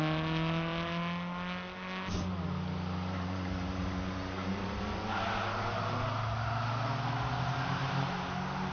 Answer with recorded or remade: recorded